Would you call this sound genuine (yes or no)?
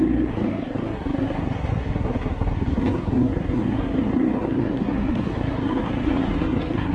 no